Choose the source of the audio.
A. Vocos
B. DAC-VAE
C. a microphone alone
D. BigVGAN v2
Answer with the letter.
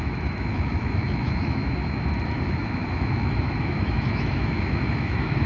B